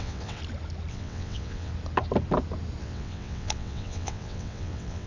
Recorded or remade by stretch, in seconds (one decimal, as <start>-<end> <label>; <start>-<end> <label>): 0.0-0.4 remade; 0.4-0.9 recorded; 0.9-1.7 remade; 1.7-2.8 recorded; 2.8-5.1 remade